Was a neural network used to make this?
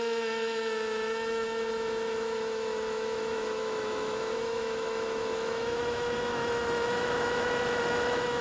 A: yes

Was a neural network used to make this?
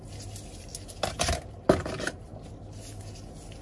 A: no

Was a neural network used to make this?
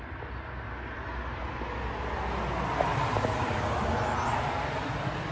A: no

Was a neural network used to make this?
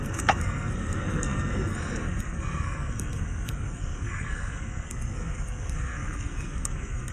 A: yes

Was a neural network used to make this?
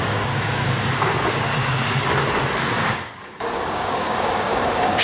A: yes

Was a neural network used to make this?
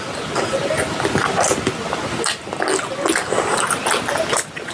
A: no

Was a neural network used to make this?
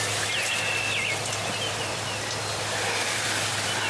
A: no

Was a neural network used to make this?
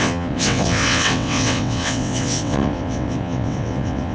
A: yes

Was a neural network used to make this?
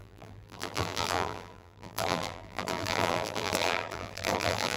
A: yes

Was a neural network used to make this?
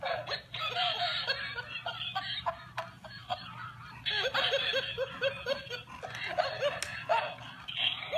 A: no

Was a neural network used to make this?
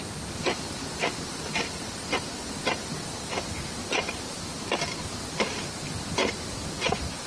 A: no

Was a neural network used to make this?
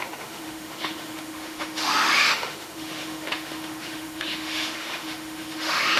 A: yes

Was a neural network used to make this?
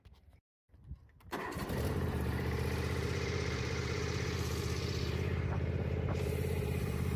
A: yes